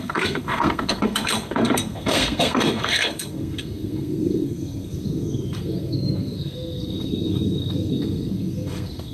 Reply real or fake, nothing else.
fake